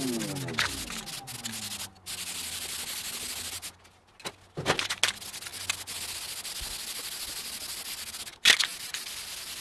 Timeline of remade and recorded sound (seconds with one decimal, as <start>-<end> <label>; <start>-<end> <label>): 0.0-9.6 recorded